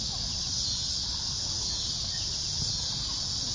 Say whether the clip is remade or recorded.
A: recorded